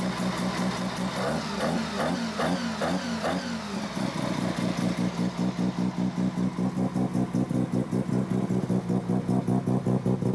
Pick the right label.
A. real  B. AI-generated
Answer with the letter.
A